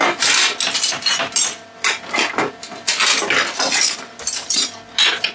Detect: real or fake real